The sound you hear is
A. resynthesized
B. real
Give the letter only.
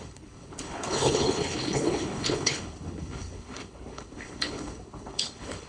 A